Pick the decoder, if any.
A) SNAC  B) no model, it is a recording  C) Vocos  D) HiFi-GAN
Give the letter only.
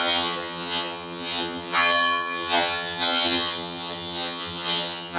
D